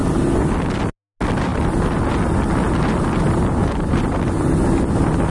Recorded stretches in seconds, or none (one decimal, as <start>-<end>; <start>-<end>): 0.0-5.3